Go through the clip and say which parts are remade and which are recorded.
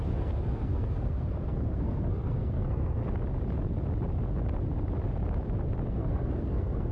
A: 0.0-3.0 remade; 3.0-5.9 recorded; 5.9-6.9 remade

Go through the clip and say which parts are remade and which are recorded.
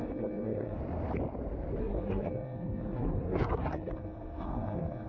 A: 0.0-0.8 remade; 0.8-1.8 recorded; 1.8-5.1 remade